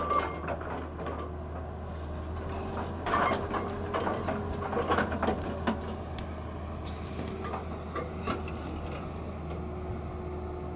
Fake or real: real